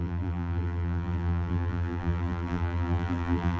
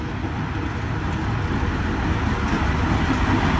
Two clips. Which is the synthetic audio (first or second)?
first